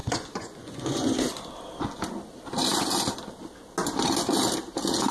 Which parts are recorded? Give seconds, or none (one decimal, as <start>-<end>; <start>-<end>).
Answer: 1.3-5.1